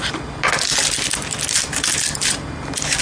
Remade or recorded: recorded